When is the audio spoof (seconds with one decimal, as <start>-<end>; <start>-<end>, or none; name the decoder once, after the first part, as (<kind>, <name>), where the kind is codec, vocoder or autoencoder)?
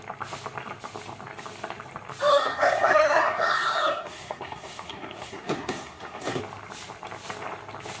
2.3-6.4 (codec, SNAC)